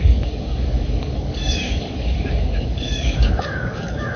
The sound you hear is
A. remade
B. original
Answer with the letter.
A